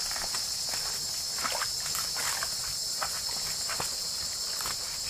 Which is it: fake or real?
real